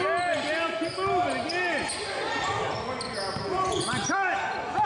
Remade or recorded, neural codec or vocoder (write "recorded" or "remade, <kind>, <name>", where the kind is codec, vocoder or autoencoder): recorded